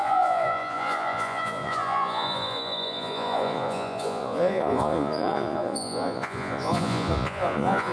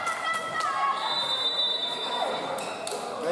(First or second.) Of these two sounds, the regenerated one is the first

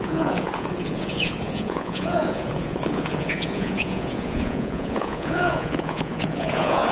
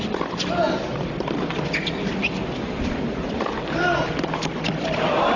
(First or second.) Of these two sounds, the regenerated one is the first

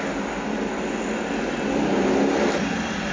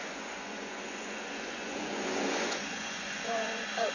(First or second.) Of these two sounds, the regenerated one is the second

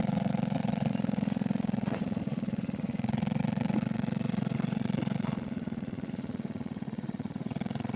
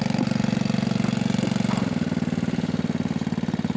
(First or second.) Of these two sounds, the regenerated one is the first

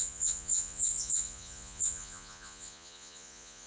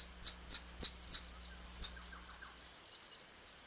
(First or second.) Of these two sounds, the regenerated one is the first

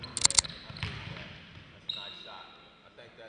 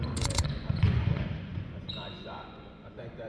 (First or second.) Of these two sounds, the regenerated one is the second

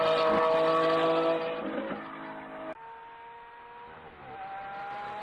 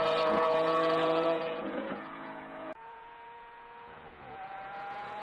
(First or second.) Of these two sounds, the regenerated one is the second